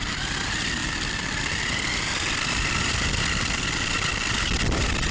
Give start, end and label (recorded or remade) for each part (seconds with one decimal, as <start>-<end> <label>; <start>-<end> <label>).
0.0-5.1 recorded